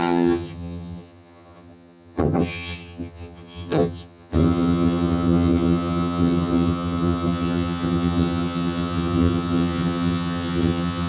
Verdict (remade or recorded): remade